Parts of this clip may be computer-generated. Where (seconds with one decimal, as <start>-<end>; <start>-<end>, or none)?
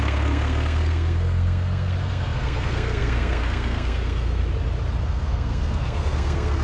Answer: 0.0-4.4; 5.0-6.6